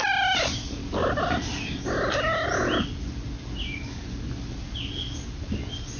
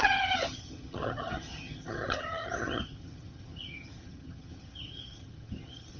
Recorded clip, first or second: first